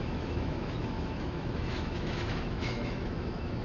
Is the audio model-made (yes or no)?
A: yes